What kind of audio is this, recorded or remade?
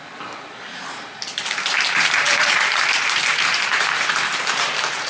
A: remade